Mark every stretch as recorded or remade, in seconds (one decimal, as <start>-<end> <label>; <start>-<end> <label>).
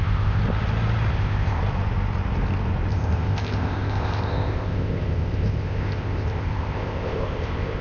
0.0-0.4 remade; 0.4-1.1 recorded; 1.1-1.6 remade; 1.6-2.9 recorded; 2.9-7.8 remade